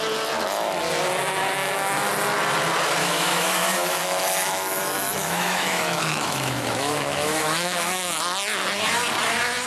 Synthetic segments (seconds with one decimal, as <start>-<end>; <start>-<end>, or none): 1.6-2.1; 3.0-8.2